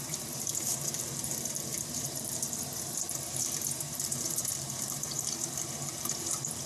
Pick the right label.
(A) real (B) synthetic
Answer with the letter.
B